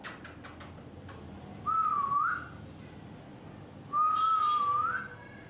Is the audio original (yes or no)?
yes